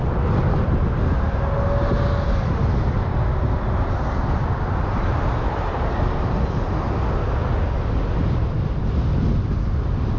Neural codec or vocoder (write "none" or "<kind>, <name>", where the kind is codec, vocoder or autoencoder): none